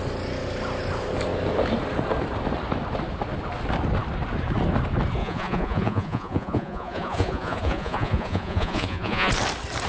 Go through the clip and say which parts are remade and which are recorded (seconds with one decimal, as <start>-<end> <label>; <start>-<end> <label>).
0.0-5.2 recorded; 5.2-9.3 remade; 9.3-9.9 recorded